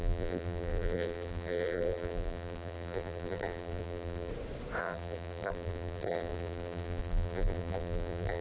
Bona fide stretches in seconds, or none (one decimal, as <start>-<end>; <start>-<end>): 4.3-4.8